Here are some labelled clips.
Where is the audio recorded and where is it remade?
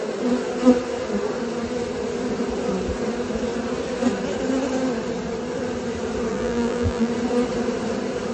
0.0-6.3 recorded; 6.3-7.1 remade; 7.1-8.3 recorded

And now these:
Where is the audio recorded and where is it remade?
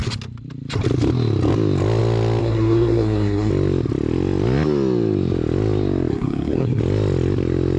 0.0-2.4 recorded; 2.4-3.5 remade; 3.5-6.1 recorded; 6.1-6.8 remade; 6.8-7.8 recorded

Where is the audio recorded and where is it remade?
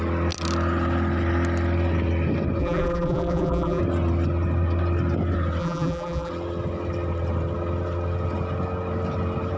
0.0-2.6 recorded; 2.6-3.8 remade; 3.8-5.6 recorded; 5.6-6.3 remade; 6.3-9.6 recorded